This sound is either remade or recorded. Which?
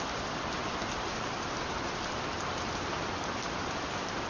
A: recorded